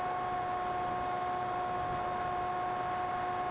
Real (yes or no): yes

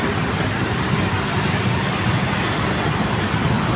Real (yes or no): yes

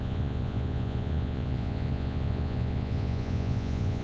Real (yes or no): no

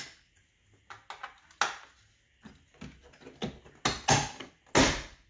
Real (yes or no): yes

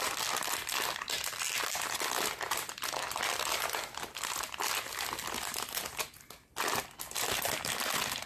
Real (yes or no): yes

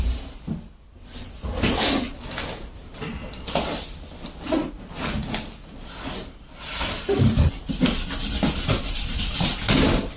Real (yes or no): yes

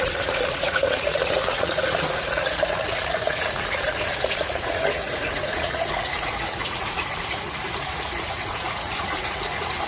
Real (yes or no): no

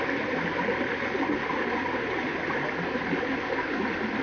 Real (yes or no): yes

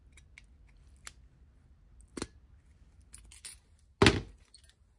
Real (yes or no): yes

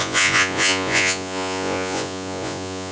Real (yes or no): no